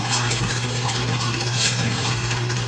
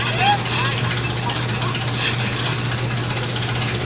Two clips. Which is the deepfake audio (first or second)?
first